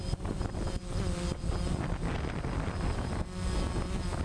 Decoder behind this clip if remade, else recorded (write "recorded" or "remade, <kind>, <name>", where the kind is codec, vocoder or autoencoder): recorded